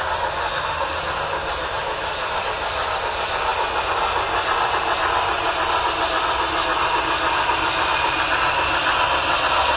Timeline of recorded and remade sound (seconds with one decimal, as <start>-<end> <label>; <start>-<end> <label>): 0.0-0.4 recorded; 0.4-1.0 remade; 1.0-9.8 recorded